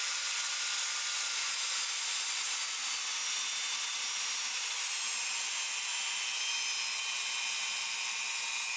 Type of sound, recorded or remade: recorded